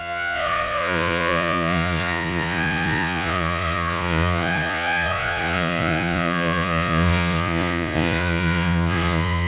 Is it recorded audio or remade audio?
remade